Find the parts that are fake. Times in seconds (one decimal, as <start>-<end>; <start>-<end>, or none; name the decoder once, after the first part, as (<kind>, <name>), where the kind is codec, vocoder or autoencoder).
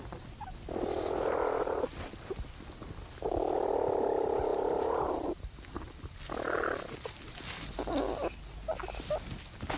none